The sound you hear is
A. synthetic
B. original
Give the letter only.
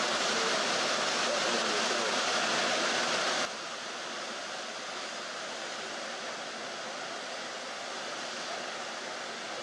B